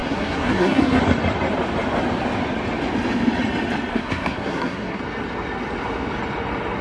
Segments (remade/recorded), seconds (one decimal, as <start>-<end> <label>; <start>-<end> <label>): 0.0-1.0 remade; 1.0-3.9 recorded; 3.9-5.0 remade; 5.0-6.8 recorded